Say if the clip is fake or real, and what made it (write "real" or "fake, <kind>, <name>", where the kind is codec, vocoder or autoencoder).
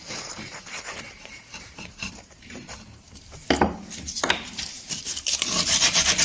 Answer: fake, vocoder, BigVGAN v2